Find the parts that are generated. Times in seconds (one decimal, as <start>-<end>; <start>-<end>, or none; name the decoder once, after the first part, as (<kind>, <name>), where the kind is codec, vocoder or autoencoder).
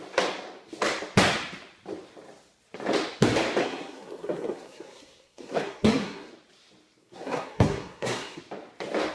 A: 3.6-6.3 (codec, SNAC); 7.0-8.4